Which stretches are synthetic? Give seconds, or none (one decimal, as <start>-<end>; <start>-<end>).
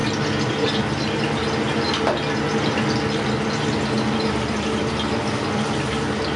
none